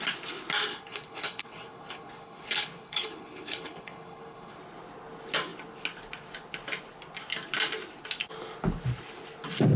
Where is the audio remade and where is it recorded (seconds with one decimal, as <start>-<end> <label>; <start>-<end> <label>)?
0.0-0.7 recorded; 0.7-4.6 remade; 4.6-9.8 recorded